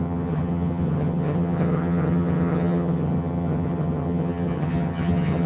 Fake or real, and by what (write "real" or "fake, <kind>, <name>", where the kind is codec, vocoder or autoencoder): fake, vocoder, HiFi-GAN